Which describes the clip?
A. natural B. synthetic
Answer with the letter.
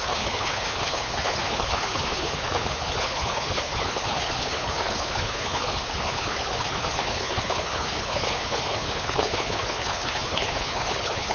B